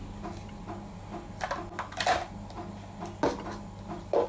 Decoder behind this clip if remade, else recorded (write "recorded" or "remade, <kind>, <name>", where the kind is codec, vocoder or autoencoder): recorded